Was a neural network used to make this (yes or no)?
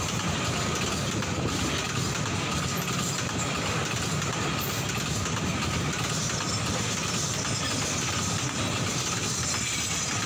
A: no